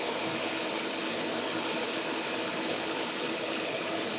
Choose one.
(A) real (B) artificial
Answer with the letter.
B